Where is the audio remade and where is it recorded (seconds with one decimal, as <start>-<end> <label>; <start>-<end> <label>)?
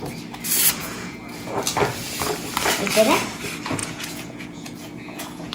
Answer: 0.0-0.8 recorded; 0.8-1.6 remade; 1.6-3.8 recorded; 3.8-5.5 remade